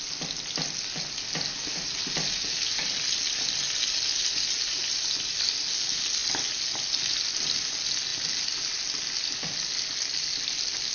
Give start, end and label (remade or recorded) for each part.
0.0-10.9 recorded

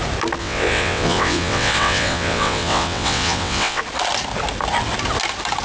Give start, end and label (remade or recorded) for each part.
0.0-0.4 recorded; 0.4-3.8 remade; 3.8-5.6 recorded

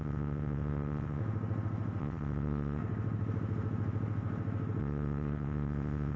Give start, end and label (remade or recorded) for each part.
0.0-1.2 remade; 1.2-2.0 recorded; 2.0-2.8 remade; 2.8-4.8 recorded; 4.8-6.2 remade

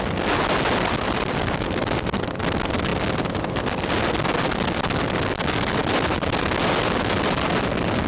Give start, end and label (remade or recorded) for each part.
0.0-8.1 recorded

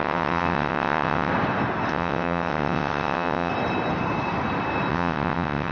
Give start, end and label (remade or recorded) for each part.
0.0-1.3 remade; 1.3-1.9 recorded; 1.9-3.5 remade; 3.5-4.9 recorded; 4.9-5.7 remade

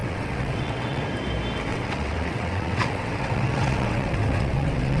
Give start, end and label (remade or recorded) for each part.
0.0-1.0 remade; 1.0-1.7 recorded; 1.7-5.0 remade